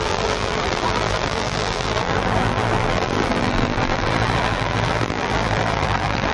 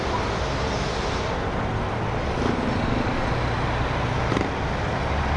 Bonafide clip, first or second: second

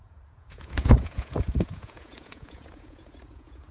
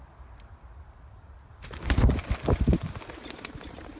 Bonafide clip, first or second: second